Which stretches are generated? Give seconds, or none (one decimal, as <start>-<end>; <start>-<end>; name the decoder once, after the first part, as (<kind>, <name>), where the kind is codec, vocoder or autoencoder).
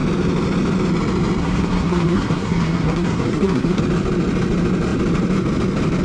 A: 1.4-3.8 (codec, SNAC)